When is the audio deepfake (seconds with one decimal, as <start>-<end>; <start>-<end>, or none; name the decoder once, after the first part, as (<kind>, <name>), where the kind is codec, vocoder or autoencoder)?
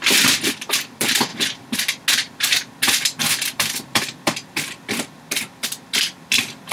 0.0-1.3 (vocoder, BigVGAN v2); 2.1-6.7